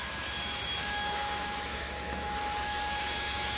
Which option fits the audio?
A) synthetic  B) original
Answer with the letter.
A